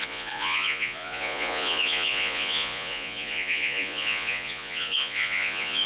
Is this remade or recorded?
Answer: remade